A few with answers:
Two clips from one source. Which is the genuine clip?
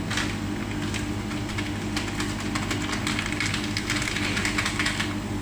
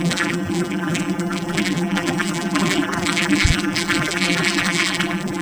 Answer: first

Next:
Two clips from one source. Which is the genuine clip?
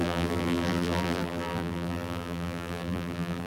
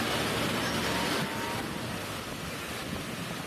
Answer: second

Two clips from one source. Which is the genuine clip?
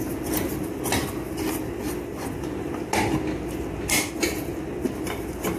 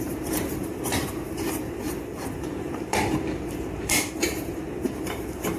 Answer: first